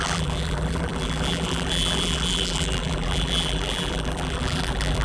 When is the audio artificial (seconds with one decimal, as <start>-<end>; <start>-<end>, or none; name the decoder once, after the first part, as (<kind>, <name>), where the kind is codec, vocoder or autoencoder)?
0.0-5.0 (vocoder, BigVGAN v2)

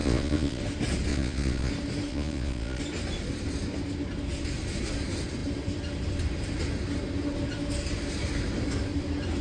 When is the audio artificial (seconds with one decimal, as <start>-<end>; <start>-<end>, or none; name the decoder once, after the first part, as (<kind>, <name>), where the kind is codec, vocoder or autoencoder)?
0.0-0.6 (vocoder, Vocos); 1.1-1.7; 2.1-2.8

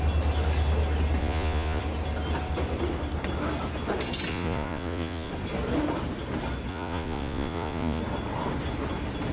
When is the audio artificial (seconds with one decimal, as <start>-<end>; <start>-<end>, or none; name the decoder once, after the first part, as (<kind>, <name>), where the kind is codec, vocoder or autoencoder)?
1.2-1.8 (vocoder, Vocos); 4.3-5.3; 6.7-8.0